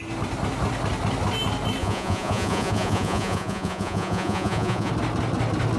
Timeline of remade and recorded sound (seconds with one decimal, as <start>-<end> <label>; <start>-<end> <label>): 0.0-1.8 recorded; 1.8-4.9 remade; 4.9-5.8 recorded

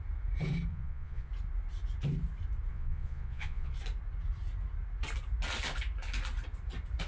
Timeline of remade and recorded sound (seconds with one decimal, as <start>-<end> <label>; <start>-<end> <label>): 0.0-0.7 recorded; 0.7-1.3 remade; 1.3-2.7 recorded; 2.7-3.7 remade; 3.7-7.1 recorded